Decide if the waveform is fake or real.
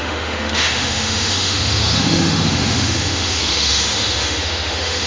fake